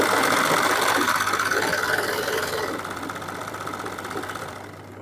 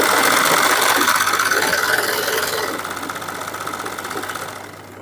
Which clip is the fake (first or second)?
first